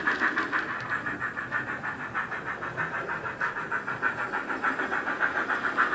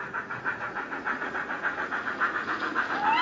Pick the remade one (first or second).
second